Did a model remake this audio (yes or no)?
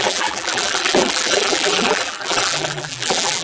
yes